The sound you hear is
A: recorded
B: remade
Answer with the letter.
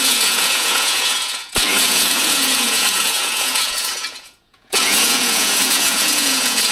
B